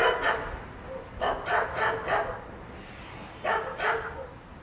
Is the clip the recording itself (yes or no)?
yes